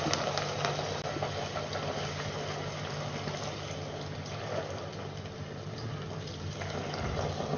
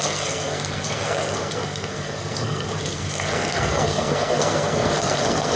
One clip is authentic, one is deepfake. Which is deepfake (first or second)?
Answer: second